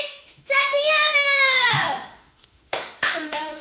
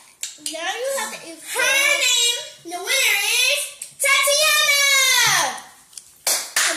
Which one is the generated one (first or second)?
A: first